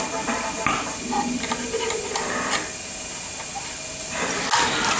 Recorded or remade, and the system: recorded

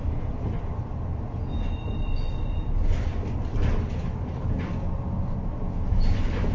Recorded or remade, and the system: recorded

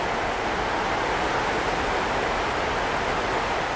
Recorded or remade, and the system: recorded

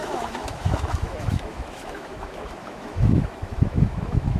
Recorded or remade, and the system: remade, autoencoder, DAC-VAE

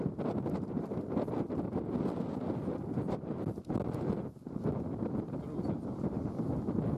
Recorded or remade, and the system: recorded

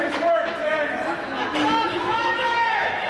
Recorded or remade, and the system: remade, autoencoder, DAC-VAE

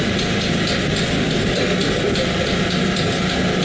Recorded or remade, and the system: recorded